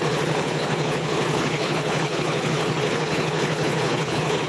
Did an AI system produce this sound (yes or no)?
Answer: yes